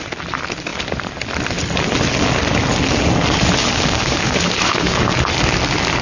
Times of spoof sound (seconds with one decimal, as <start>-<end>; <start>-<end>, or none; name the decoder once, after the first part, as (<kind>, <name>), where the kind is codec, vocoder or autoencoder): 3.6-5.1 (codec, DAC)

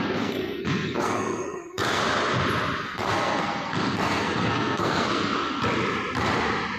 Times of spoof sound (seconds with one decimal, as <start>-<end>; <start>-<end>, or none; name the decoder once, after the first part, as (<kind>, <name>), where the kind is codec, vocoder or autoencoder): 0.0-2.0 (codec, SNAC); 2.8-5.6

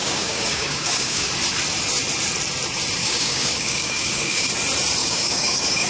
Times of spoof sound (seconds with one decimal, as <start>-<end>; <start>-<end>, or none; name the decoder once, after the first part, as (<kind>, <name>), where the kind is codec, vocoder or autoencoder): 0.0-1.3 (codec, DAC); 3.0-4.5; 5.0-5.9

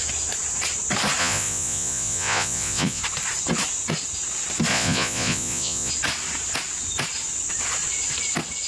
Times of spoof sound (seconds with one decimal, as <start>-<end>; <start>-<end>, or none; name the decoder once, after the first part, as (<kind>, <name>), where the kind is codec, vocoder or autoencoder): 1.2-3.0 (vocoder, Vocos); 4.7-5.9

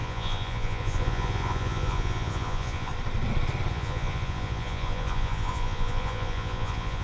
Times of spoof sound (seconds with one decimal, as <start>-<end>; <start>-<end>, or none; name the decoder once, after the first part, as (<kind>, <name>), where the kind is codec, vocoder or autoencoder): 0.0-2.9 (vocoder, Vocos); 3.7-7.0

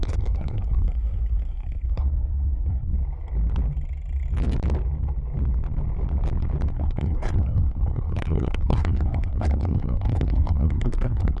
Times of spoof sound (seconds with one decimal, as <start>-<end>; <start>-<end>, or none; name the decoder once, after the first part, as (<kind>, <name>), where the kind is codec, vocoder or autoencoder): 0.0-2.9 (codec, SNAC); 6.7-11.4

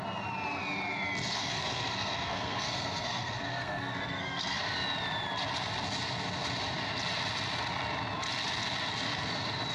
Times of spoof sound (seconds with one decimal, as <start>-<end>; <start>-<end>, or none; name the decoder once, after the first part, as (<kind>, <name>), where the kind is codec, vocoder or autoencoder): 1.4-4.6 (codec, SNAC)

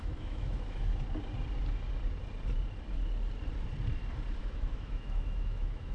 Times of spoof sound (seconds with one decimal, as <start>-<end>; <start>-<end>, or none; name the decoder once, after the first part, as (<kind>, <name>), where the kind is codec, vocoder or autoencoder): 0.0-0.9 (autoencoder, DAC-VAE); 4.4-5.9